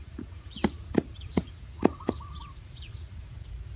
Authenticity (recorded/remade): remade